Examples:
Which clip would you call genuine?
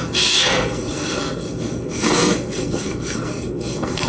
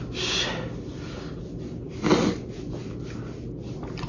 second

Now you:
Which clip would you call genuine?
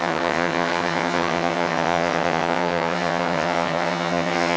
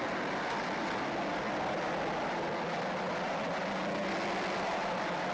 second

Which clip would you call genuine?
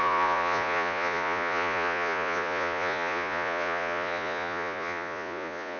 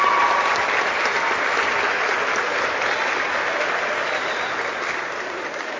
second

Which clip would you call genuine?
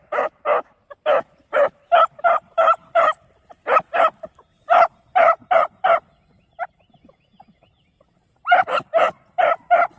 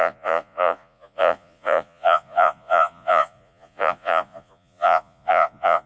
first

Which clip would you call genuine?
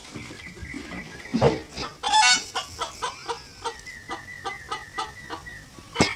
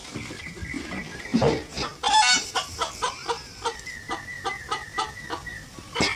first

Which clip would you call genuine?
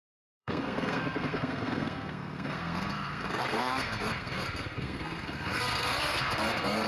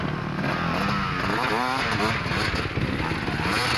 second